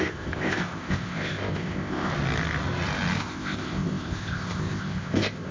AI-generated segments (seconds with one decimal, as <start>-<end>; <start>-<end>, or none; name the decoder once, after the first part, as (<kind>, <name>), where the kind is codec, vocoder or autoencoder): 0.0-2.1 (codec, ZipCodec); 3.2-5.5